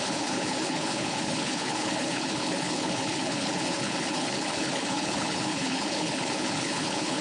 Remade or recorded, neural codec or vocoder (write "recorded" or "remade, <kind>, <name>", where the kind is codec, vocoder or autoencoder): remade, codec, HILCodec